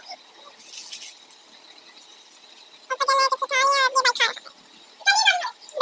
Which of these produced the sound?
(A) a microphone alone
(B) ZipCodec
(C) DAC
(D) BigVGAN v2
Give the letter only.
A